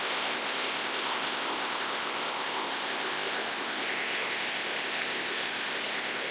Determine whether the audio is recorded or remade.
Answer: remade